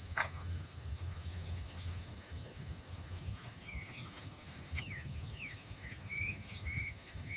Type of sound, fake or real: fake